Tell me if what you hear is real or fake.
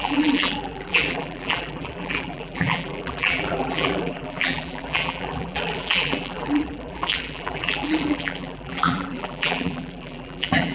fake